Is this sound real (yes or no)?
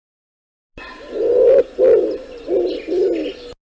yes